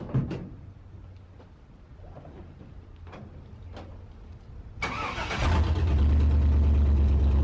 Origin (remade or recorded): recorded